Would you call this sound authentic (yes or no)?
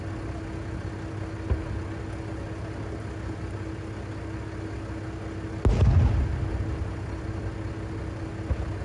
yes